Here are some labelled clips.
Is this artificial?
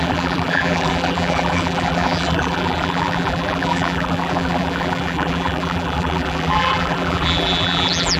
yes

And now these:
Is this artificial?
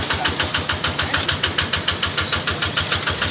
no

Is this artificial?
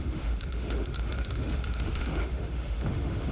yes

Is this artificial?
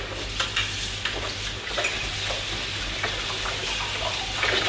no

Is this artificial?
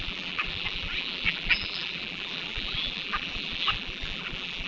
yes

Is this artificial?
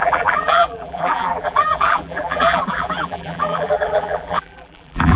yes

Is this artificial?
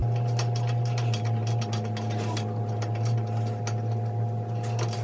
no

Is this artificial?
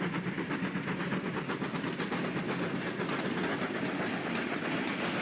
no